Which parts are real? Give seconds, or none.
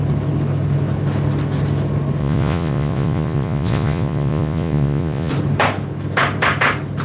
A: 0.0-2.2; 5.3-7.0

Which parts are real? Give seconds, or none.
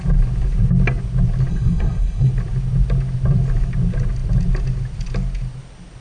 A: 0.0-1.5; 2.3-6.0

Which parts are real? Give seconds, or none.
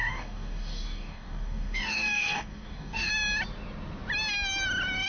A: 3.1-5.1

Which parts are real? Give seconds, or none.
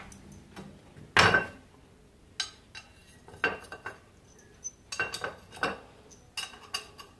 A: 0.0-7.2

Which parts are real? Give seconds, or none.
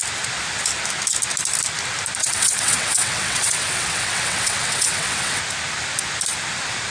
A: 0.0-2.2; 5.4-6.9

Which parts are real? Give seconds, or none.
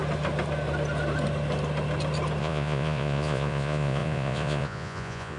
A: 0.0-2.4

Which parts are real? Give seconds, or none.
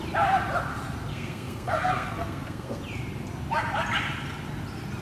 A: 0.0-1.1; 2.8-5.0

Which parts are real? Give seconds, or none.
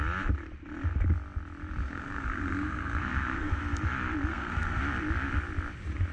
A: 0.0-1.8; 3.6-4.3; 4.8-6.1